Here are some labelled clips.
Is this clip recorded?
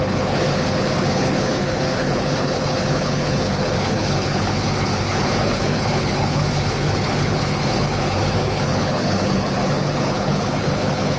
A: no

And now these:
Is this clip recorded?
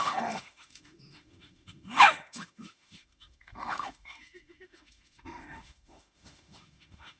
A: no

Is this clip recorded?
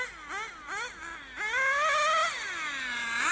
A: yes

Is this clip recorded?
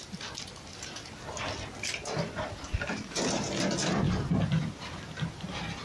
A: yes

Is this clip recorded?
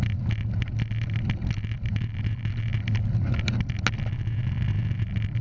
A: yes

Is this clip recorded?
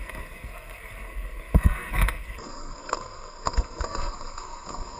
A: no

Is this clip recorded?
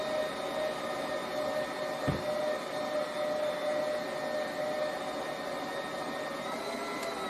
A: yes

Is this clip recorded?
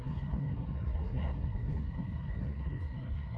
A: no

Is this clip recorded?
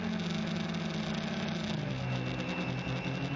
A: yes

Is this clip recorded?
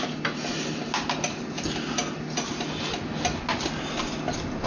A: yes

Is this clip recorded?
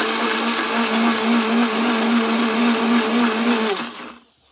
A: yes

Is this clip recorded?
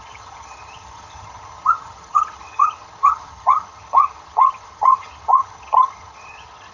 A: no